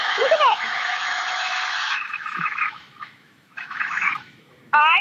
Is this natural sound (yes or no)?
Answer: no